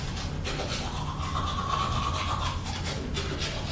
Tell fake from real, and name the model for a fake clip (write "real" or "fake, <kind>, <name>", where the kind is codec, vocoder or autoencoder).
real